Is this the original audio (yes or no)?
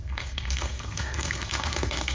no